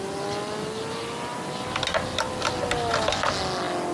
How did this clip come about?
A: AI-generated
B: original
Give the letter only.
B